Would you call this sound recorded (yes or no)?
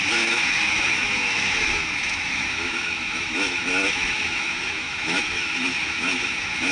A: no